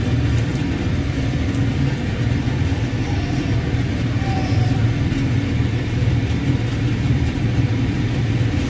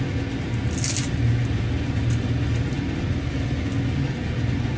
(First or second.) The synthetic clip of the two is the first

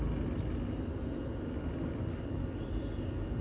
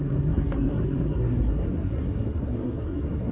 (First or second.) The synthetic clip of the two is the second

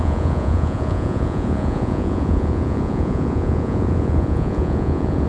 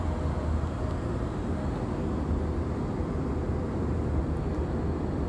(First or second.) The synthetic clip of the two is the first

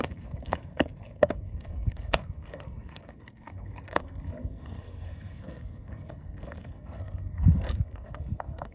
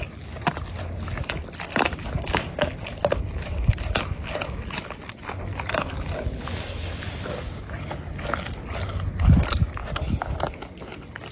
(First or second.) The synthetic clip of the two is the first